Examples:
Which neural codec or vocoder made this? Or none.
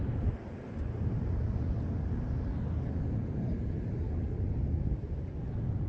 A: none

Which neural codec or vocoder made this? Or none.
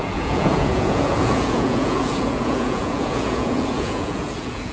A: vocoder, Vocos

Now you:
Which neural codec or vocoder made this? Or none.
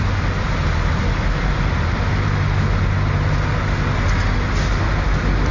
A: none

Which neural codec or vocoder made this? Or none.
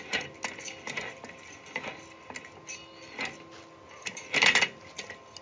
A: none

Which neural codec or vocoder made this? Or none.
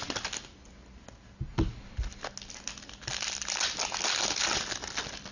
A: none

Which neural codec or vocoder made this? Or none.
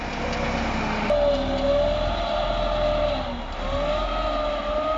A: none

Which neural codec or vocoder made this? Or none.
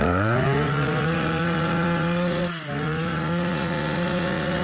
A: vocoder, Vocos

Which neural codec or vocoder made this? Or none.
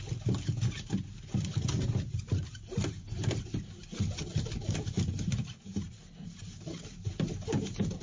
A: none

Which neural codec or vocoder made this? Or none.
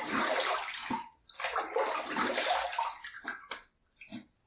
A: none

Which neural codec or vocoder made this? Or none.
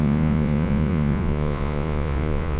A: vocoder, Vocos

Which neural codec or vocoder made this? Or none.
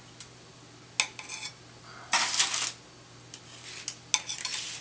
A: none